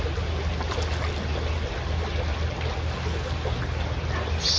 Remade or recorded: recorded